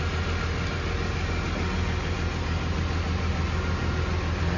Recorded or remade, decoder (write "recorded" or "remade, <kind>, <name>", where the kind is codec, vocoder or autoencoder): recorded